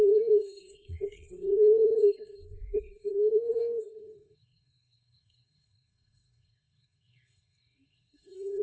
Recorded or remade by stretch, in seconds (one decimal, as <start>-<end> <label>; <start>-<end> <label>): 0.0-8.6 remade